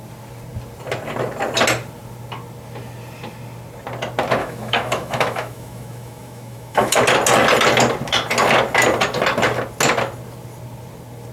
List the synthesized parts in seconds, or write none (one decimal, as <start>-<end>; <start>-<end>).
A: 4.4-7.0